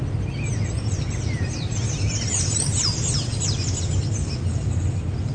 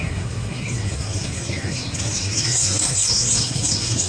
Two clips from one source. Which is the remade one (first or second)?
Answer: second